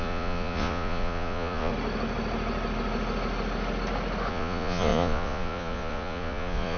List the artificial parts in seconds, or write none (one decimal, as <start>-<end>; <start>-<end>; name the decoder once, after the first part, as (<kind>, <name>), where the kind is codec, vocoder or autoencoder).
0.0-1.7 (vocoder, Vocos); 4.3-6.8